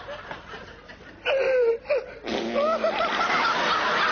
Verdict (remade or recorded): recorded